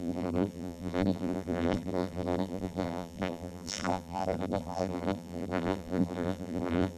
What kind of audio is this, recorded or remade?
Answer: remade